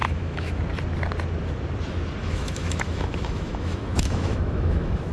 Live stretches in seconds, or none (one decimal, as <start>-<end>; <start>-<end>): 0.6-2.2